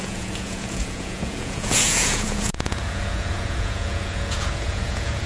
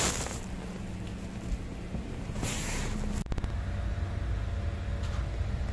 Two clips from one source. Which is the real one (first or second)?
second